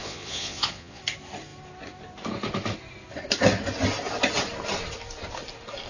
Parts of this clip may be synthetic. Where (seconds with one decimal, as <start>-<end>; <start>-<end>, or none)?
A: 0.0-1.0